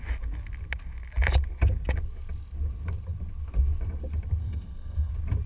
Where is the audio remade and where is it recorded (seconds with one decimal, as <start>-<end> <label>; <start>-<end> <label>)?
0.0-4.4 recorded; 4.4-5.1 remade; 5.1-5.5 recorded